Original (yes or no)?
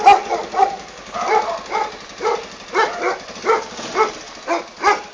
yes